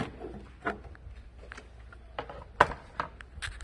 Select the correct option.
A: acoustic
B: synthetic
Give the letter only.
A